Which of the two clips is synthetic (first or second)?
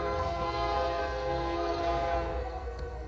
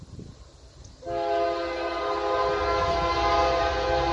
first